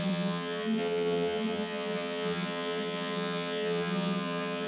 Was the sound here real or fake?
fake